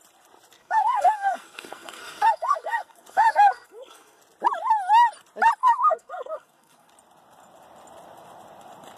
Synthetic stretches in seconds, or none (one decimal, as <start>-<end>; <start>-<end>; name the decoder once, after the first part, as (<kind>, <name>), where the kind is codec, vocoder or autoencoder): 0.6-4.2 (codec, SNAC); 5.6-6.9